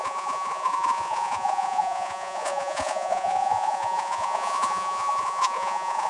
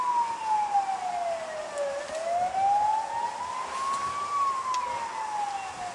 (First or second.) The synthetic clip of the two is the first